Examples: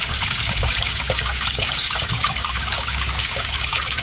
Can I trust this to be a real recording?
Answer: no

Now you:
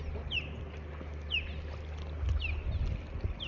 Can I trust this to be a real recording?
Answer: yes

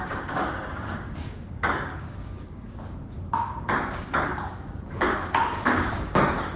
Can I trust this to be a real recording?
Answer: no